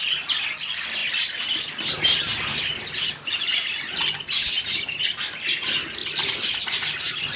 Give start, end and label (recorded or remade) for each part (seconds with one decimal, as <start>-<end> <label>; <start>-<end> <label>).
0.0-6.0 recorded; 6.0-7.4 remade